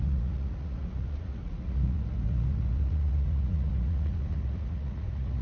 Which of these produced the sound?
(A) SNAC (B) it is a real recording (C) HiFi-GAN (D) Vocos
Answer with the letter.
D